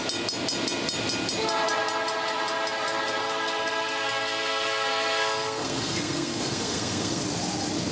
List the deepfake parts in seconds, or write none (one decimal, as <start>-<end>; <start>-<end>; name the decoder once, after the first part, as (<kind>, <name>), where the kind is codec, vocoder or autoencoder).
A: 3.2-7.2 (codec, SNAC)